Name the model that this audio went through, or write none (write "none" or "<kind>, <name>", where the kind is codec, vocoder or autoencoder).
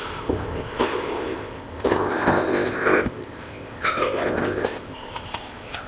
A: codec, ZipCodec